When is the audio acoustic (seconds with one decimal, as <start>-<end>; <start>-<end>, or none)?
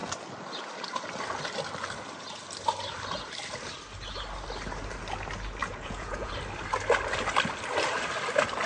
0.0-5.6; 6.3-8.7